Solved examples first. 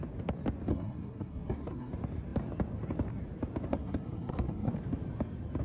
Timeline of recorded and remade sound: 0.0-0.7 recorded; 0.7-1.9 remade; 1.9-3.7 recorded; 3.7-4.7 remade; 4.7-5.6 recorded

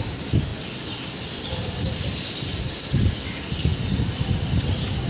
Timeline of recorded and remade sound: 0.0-5.1 recorded

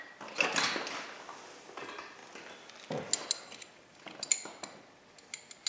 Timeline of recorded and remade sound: 0.0-5.7 recorded